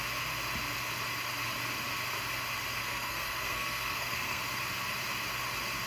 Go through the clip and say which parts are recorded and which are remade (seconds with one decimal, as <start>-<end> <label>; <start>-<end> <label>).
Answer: 0.0-2.8 recorded; 2.8-4.4 remade; 4.4-5.9 recorded

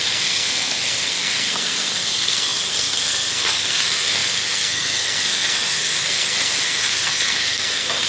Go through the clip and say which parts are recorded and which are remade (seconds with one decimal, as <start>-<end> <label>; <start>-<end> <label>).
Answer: 0.0-8.1 remade

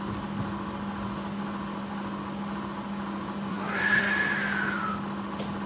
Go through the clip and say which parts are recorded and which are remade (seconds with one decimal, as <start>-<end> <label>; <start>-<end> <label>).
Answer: 0.0-3.5 recorded; 3.5-4.1 remade; 4.1-5.7 recorded

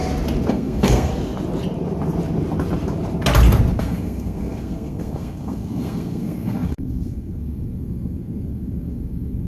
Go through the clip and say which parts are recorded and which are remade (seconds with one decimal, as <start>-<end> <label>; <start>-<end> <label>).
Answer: 0.0-0.5 recorded; 0.5-1.1 remade; 1.1-3.8 recorded; 3.8-9.5 remade

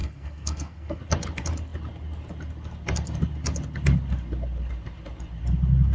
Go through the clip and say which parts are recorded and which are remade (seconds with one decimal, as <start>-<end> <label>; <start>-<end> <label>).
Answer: 0.0-1.0 remade; 1.0-5.9 recorded

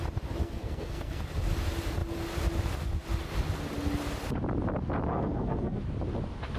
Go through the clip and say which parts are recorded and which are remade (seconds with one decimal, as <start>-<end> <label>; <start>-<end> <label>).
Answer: 0.0-0.4 recorded; 0.4-1.2 remade; 1.2-5.1 recorded; 5.1-5.8 remade; 5.8-6.6 recorded

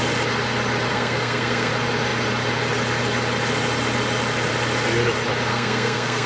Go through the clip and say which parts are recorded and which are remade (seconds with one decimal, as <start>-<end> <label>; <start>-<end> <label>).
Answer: 0.0-0.9 recorded; 0.9-1.7 remade; 1.7-5.5 recorded; 5.5-6.3 remade

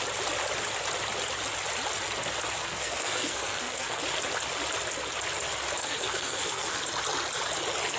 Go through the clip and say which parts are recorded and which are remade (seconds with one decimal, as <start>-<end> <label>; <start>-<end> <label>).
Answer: 0.0-2.6 recorded; 2.6-4.0 remade; 4.0-5.8 recorded; 5.8-6.8 remade; 6.8-8.0 recorded